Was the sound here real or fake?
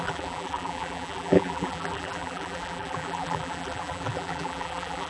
fake